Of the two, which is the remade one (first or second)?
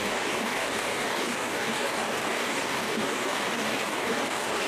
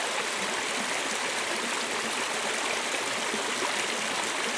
first